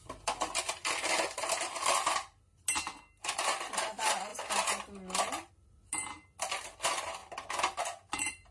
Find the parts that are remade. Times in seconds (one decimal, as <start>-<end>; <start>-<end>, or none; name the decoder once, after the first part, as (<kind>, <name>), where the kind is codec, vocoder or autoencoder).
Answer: none